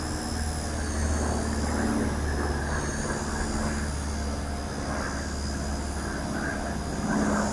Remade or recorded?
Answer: recorded